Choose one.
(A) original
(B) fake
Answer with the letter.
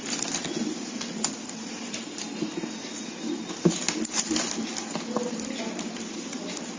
A